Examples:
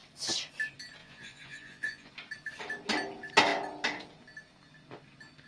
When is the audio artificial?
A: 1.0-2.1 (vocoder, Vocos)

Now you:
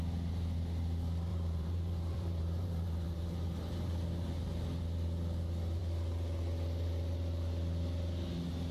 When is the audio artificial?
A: 1.3-3.9 (vocoder, BigVGAN v2)

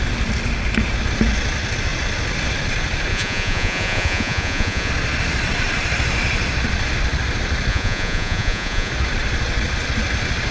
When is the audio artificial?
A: 3.1-4.9 (vocoder, Vocos); 7.7-8.9

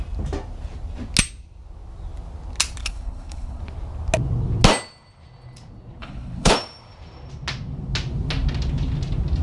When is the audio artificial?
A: 2.8-3.6 (codec, HILCodec); 6.0-6.5